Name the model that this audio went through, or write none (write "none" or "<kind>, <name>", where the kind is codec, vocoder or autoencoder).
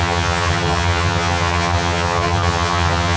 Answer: vocoder, HiFi-GAN